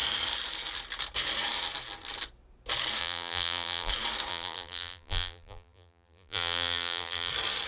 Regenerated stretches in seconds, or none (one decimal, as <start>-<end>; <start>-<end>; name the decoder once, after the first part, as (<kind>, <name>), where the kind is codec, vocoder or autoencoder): 3.0-3.9 (vocoder, BigVGAN v2); 4.3-7.3